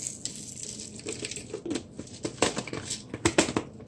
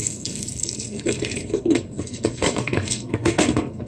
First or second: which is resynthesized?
second